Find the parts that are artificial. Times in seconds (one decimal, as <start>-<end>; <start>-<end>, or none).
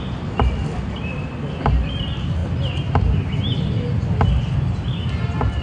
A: none